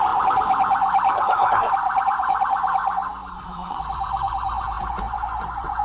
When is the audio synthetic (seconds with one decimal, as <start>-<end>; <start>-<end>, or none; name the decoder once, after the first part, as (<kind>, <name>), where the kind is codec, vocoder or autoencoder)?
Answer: 1.1-1.7 (codec, SNAC); 3.3-3.8